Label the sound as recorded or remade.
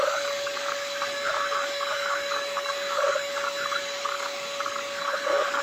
remade